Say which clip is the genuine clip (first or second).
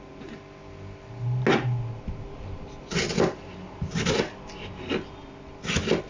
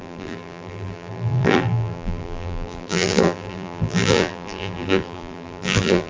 first